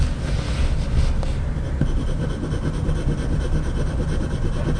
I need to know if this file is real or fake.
real